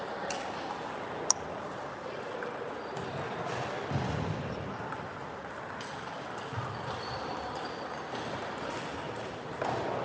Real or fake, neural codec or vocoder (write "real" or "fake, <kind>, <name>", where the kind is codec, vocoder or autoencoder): real